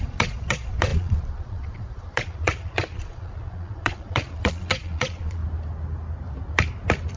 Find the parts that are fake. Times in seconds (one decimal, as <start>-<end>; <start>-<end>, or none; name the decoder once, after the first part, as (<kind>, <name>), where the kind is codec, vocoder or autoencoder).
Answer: 0.0-5.4 (vocoder, Vocos)